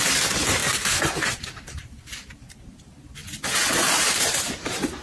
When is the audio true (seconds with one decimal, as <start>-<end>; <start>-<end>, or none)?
3.2-3.7